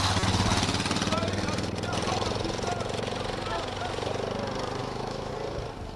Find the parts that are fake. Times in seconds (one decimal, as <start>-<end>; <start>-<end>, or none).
4.8-5.3